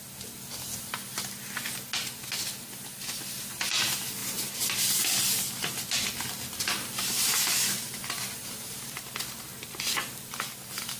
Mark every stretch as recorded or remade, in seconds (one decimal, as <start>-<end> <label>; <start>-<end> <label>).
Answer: 0.0-11.0 recorded